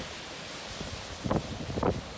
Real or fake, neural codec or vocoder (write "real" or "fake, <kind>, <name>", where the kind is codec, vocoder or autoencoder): real